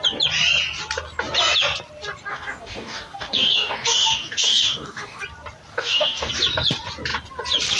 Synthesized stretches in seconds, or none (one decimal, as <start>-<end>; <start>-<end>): 2.3-5.2; 5.7-6.3